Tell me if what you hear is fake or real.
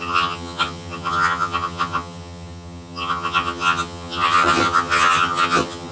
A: fake